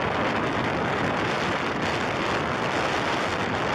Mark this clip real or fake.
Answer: real